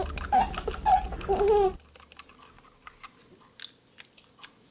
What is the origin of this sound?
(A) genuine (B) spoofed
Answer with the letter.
A